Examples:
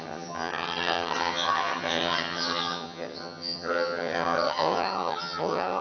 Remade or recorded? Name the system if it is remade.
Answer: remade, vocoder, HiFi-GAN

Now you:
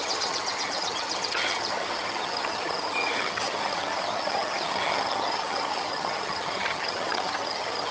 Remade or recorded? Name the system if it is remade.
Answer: remade, vocoder, HiFi-GAN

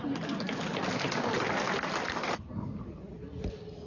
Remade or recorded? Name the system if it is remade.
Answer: recorded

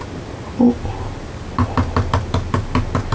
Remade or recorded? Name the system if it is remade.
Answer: recorded